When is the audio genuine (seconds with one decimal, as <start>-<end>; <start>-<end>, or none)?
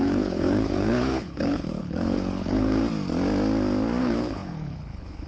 2.8-4.0